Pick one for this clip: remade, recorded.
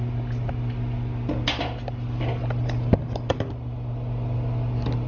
recorded